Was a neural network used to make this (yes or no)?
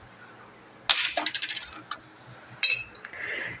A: no